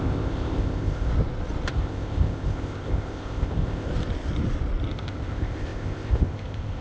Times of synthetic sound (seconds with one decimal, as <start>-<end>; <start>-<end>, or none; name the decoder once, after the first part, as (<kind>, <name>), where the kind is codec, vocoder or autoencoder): 0.0-1.1 (codec, ZipCodec); 1.7-3.9; 4.9-6.8